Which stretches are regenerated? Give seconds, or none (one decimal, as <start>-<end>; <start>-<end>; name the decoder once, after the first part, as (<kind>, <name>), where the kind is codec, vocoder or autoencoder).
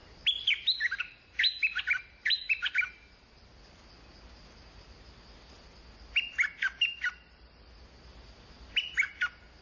1.5-3.5 (vocoder, BigVGAN v2)